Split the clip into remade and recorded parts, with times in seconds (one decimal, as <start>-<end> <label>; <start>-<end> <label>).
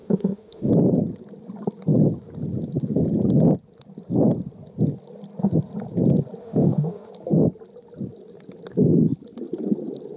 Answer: 0.0-0.7 remade; 0.7-6.4 recorded; 6.4-7.1 remade; 7.1-10.2 recorded